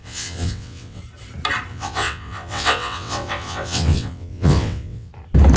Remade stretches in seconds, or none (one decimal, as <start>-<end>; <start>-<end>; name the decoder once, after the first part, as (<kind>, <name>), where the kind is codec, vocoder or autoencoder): 0.0-1.0 (vocoder, WaveNeXt); 1.7-5.1